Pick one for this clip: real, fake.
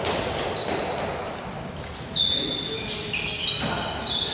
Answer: real